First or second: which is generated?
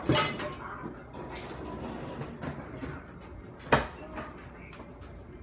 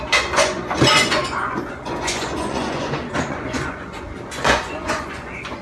second